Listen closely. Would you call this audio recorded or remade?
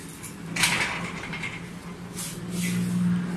recorded